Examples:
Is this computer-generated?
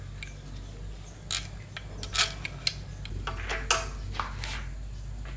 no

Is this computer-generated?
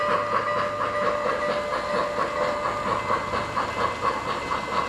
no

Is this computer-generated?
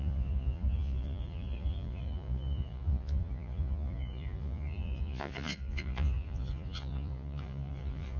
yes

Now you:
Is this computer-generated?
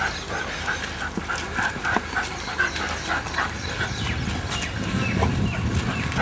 no